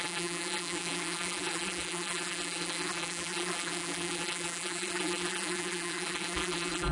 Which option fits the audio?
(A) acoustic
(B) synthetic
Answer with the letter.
B